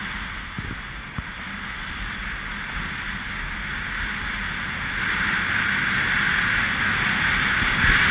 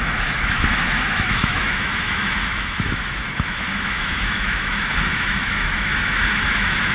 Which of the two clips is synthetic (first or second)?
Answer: second